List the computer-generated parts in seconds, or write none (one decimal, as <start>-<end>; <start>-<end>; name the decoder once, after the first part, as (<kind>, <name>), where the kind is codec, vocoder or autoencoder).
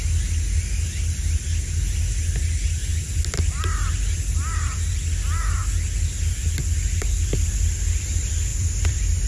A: 8.5-9.3 (vocoder, BigVGAN v2)